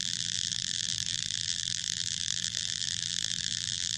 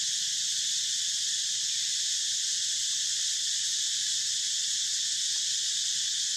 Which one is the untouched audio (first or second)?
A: second